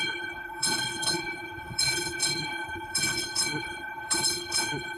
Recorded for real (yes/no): no